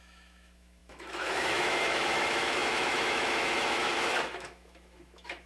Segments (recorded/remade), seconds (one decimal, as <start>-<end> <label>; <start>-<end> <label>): 0.0-5.5 remade